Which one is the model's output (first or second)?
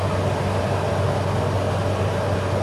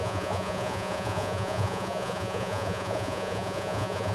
second